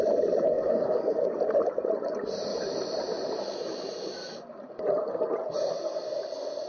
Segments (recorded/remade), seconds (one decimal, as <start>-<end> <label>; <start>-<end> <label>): 0.0-0.5 recorded; 0.5-1.3 remade; 1.3-6.7 recorded